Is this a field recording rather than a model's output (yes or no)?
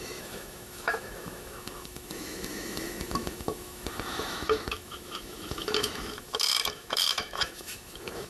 no